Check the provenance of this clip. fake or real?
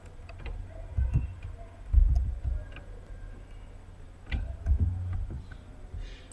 real